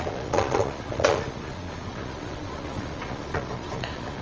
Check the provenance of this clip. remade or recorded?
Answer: remade